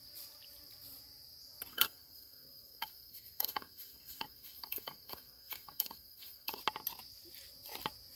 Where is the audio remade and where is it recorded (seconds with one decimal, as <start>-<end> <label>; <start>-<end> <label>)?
0.0-1.7 recorded; 1.7-6.6 remade; 6.6-8.2 recorded